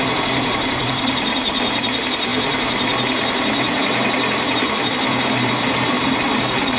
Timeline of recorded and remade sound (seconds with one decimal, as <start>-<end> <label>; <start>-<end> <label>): 0.0-6.8 remade